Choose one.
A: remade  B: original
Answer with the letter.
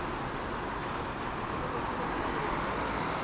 B